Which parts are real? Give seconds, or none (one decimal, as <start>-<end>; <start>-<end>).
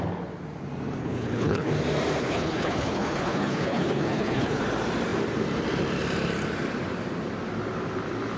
0.0-1.0; 1.7-2.2; 4.6-8.4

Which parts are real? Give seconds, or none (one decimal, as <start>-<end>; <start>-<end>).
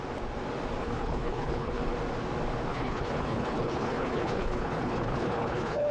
0.0-0.8; 1.8-2.7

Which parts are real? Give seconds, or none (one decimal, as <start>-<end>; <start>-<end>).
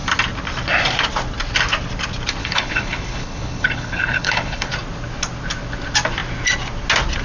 0.0-2.4; 4.7-7.2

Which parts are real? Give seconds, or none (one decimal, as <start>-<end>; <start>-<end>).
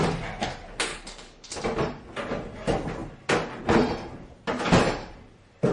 0.0-0.9; 1.6-5.7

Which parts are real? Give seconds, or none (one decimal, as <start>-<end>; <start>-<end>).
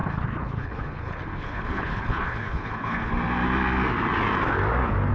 3.1-5.1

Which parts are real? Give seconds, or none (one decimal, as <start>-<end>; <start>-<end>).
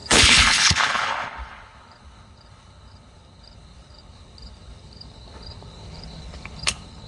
none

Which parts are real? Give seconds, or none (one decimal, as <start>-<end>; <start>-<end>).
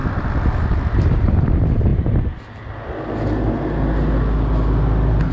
0.0-5.3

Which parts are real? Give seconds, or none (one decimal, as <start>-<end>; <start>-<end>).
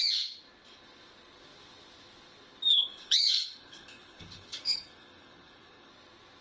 0.0-2.7; 5.9-6.4